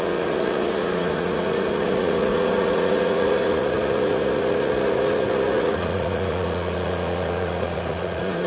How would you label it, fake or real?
fake